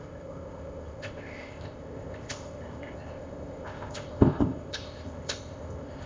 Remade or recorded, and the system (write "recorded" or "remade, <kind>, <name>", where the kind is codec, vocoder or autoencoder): remade, codec, ZipCodec